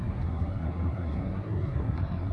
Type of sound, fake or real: fake